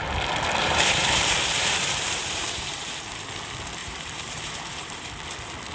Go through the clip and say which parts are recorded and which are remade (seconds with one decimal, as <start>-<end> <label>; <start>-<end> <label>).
0.0-0.6 recorded; 0.6-3.2 remade; 3.2-3.8 recorded; 3.8-5.1 remade; 5.1-5.7 recorded